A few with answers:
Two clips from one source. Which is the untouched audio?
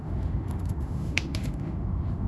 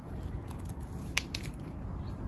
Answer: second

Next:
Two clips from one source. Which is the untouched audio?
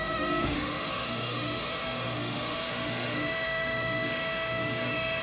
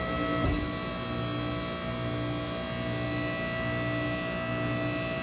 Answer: second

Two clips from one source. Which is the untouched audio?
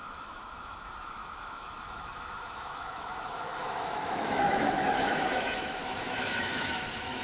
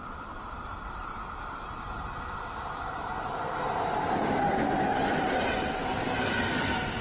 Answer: second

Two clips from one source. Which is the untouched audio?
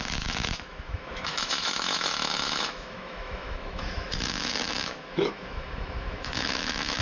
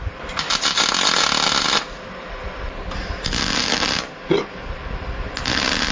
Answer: second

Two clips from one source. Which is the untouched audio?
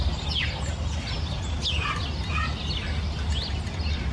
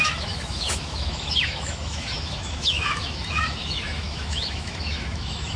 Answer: first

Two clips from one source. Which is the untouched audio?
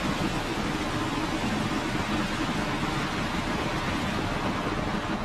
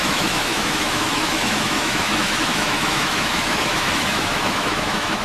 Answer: first